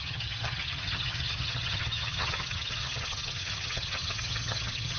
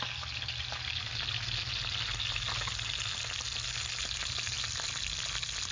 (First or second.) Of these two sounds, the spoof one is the first